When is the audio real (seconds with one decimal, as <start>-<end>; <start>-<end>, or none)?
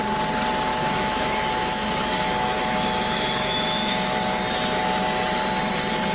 0.0-0.7; 4.4-6.1